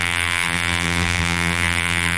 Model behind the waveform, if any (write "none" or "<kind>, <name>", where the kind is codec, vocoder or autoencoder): vocoder, BigVGAN v2